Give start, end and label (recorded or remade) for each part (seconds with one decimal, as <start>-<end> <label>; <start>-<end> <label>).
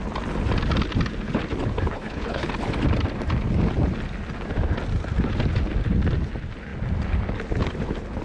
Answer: 0.0-1.9 recorded; 1.9-2.5 remade; 2.5-8.2 recorded